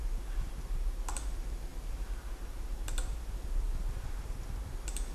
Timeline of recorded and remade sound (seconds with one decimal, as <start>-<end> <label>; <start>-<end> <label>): 0.0-5.1 recorded